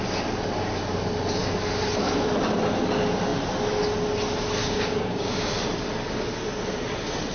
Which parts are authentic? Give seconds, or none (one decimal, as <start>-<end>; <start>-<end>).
0.0-4.6; 5.5-7.3